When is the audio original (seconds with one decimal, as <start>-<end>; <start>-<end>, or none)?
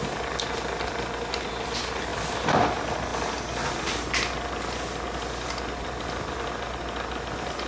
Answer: 0.0-7.7